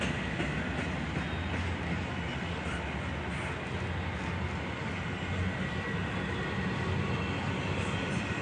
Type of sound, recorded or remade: recorded